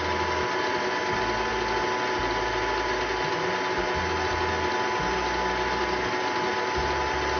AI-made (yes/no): no